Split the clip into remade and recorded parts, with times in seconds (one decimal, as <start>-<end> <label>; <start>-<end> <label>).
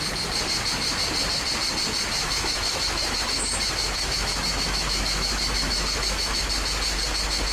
0.0-2.1 recorded; 2.1-6.4 remade; 6.4-7.5 recorded